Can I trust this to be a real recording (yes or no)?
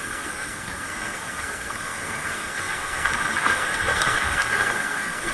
no